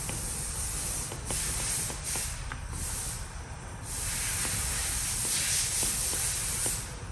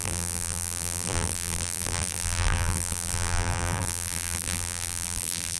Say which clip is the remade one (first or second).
second